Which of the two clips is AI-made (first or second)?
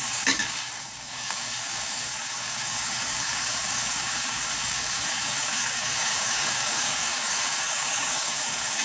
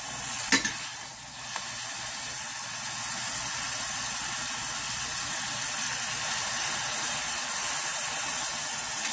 first